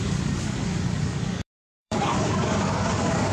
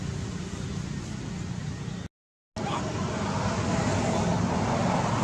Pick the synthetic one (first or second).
first